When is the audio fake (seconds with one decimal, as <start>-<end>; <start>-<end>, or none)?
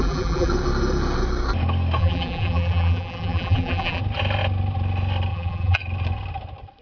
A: 0.0-0.5; 2.0-4.0; 5.3-5.8